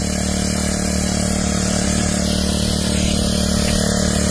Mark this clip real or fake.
real